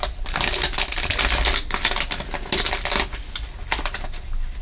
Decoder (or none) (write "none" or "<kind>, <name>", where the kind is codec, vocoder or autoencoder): none